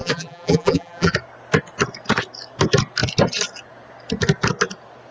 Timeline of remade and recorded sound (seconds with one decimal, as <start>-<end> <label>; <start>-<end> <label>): 0.0-1.1 remade; 1.1-5.1 recorded